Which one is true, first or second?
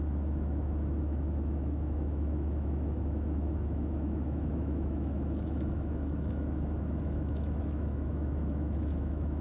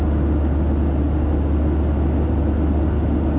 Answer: second